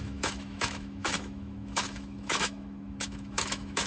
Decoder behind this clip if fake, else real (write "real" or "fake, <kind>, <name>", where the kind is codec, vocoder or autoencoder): fake, autoencoder, DAC-VAE